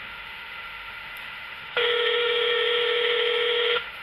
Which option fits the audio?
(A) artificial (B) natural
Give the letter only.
A